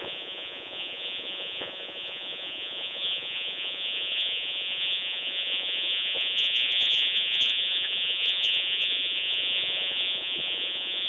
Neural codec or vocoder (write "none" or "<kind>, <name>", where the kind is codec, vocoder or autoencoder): vocoder, Vocos